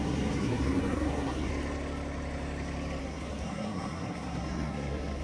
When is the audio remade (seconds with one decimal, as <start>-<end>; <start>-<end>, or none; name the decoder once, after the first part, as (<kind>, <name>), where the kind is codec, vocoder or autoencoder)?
0.0-1.5 (codec, SNAC); 3.0-5.2